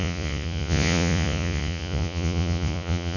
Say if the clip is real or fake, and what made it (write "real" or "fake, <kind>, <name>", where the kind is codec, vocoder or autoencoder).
fake, vocoder, Vocos